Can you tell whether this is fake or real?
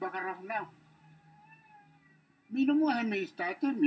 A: real